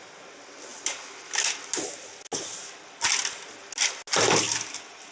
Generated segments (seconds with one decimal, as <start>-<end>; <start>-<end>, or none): none